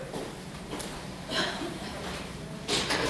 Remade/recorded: remade